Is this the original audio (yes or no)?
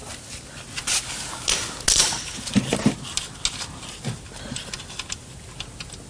yes